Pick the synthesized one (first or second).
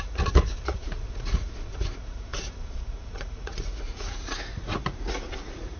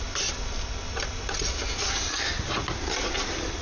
first